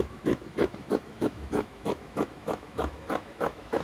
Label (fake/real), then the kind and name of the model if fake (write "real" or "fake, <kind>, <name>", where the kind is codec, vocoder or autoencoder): fake, autoencoder, DAC-VAE